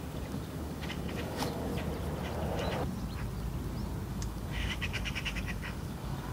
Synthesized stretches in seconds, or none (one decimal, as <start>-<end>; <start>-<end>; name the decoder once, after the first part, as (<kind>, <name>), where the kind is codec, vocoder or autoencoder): 0.0-1.7 (codec, DAC); 4.1-6.3